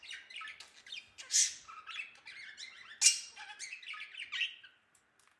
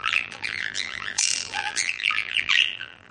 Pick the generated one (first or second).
second